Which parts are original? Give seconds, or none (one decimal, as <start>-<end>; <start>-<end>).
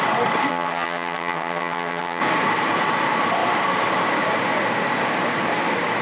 0.0-0.5; 2.2-6.0